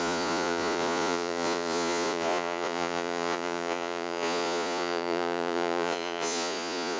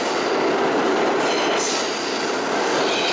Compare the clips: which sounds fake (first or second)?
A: first